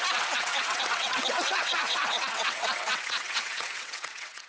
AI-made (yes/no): yes